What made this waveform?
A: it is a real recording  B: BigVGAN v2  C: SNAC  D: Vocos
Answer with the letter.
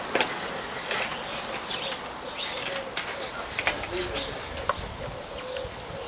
A